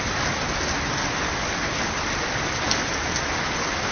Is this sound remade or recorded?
recorded